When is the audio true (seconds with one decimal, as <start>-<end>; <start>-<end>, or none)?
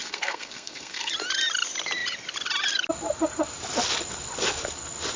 1.1-5.2